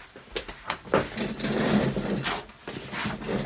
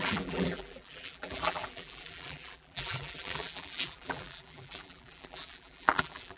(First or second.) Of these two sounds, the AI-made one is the second